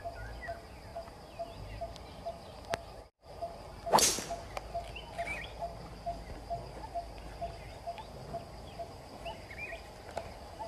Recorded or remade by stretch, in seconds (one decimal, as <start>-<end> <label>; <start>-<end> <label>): 0.0-10.7 recorded